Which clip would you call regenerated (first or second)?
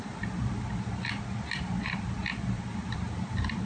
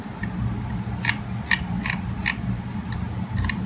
first